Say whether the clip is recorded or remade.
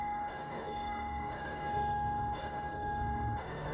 remade